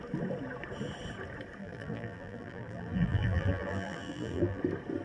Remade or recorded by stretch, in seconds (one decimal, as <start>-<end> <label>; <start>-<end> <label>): 0.0-1.6 recorded; 1.6-4.6 remade; 4.6-5.0 recorded